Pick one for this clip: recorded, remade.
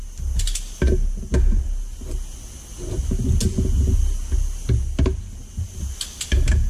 recorded